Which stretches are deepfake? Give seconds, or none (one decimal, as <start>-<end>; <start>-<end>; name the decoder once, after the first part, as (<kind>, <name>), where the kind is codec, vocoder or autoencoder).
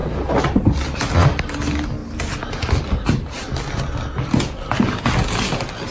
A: 0.0-0.7 (vocoder, BigVGAN v2)